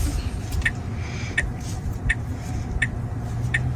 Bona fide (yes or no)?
yes